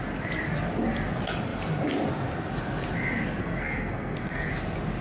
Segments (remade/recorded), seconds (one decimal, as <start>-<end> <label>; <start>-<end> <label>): 0.0-3.4 recorded; 3.4-4.5 remade; 4.5-5.0 recorded